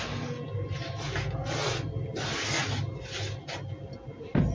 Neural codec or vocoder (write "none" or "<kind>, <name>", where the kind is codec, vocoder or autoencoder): none